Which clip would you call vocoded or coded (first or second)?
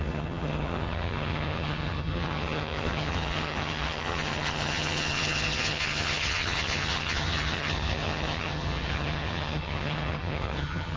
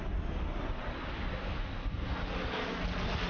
first